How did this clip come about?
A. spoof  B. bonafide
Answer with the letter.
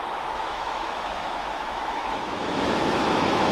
A